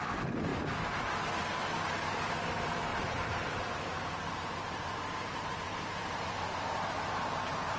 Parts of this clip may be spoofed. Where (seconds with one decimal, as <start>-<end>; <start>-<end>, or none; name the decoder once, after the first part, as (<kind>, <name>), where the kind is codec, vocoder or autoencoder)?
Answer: none